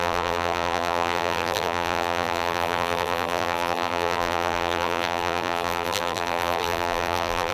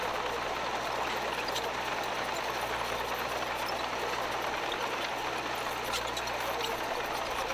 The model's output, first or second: first